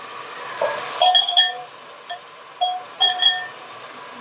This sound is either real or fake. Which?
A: real